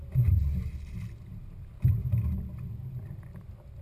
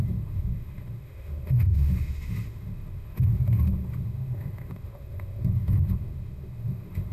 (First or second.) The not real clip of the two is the second